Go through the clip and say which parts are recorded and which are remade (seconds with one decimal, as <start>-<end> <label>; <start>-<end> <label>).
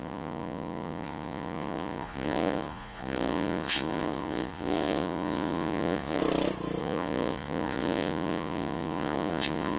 0.0-6.2 remade; 6.2-6.8 recorded; 6.8-9.8 remade